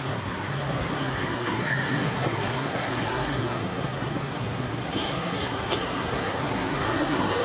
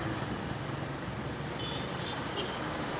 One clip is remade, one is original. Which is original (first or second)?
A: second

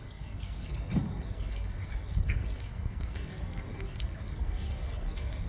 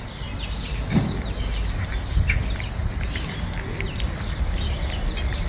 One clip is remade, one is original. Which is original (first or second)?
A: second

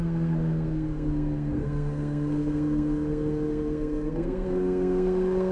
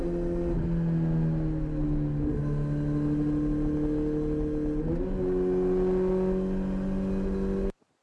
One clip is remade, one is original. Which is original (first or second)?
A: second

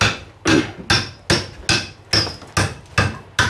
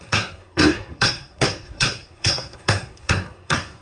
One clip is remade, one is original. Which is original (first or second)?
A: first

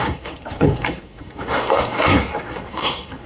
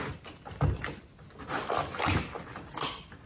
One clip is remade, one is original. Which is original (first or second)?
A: second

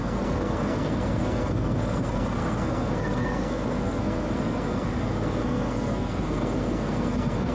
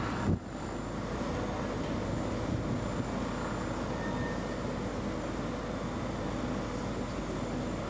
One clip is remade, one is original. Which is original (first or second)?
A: second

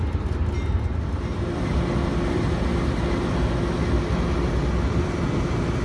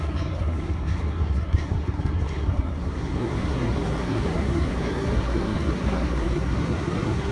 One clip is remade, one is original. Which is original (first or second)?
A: first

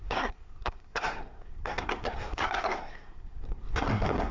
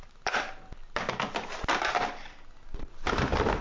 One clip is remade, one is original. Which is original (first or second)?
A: second